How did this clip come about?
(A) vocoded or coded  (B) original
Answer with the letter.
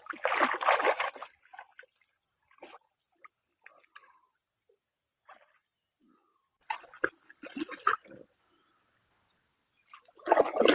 B